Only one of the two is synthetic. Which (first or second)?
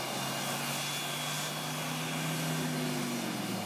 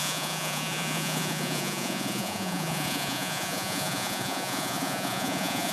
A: second